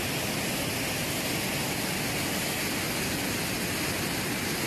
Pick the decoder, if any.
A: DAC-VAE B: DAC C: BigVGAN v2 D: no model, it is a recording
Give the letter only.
D